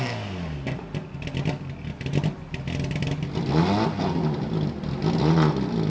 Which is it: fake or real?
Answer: real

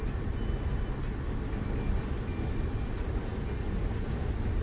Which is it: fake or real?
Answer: real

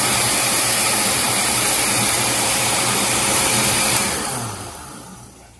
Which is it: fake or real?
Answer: fake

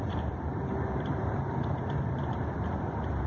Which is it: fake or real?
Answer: fake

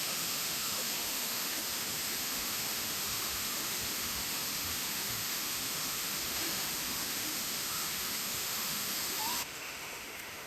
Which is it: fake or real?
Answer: fake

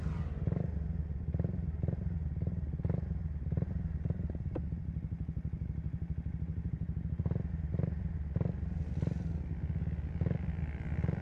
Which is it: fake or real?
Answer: real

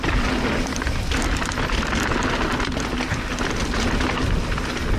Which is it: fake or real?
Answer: real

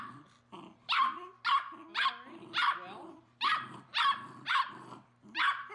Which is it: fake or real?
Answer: real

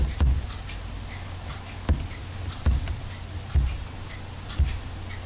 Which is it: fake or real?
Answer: real